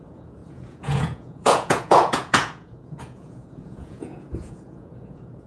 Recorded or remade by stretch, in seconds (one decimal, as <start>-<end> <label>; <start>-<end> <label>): 0.0-5.5 remade